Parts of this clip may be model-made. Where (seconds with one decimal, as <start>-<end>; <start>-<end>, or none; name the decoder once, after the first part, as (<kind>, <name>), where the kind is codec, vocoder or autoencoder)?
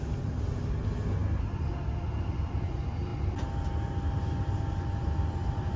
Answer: none